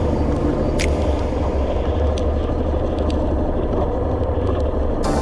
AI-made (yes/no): no